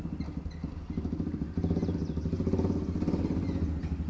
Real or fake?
real